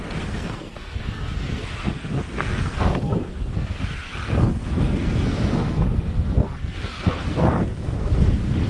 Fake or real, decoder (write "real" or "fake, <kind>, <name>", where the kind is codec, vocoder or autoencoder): fake, codec, SNAC